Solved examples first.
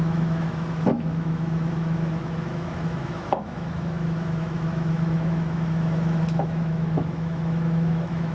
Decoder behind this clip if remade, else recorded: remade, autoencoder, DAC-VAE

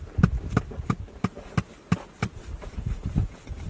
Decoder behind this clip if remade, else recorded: recorded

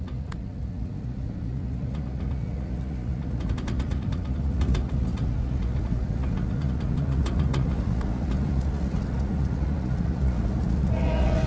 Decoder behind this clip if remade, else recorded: remade, vocoder, Vocos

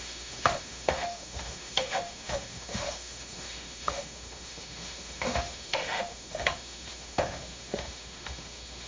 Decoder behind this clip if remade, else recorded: remade, autoencoder, DAC-VAE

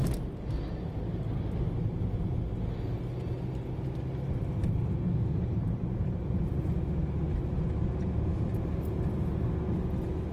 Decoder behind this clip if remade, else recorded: recorded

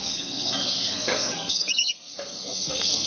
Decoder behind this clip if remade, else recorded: remade, codec, SNAC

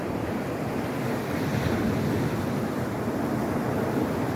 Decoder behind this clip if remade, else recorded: recorded